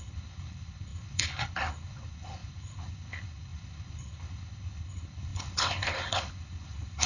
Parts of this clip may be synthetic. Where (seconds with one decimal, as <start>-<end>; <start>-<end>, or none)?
0.0-7.1